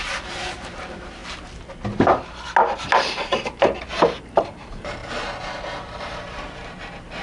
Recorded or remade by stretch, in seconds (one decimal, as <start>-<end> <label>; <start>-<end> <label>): 0.0-1.2 remade; 1.2-4.2 recorded; 4.2-7.2 remade

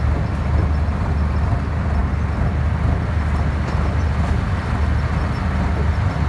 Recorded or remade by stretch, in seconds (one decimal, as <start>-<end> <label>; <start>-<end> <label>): 0.0-6.3 recorded

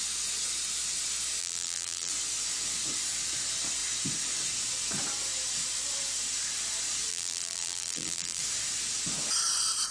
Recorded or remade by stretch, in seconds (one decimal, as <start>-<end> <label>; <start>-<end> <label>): 0.0-1.4 recorded; 1.4-2.1 remade; 2.1-7.1 recorded; 7.1-8.4 remade; 8.4-9.9 recorded

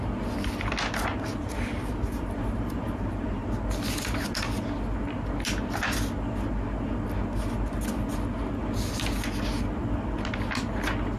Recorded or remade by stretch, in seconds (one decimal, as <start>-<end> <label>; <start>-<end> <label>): 0.0-1.1 recorded; 1.1-3.4 remade; 3.4-11.2 recorded

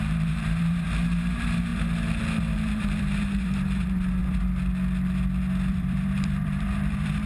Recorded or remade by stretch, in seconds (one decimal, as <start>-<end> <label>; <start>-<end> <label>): 0.0-1.7 remade; 1.7-2.4 recorded; 2.4-4.2 remade; 4.2-5.7 recorded; 5.7-7.3 remade